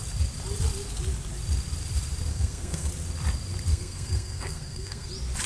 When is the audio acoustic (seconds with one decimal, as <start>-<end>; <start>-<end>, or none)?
0.0-2.3; 2.9-3.7; 5.1-5.5